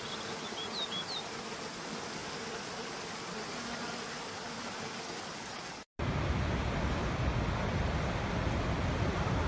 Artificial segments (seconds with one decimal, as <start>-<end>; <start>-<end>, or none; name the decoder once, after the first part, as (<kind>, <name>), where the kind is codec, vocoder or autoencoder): none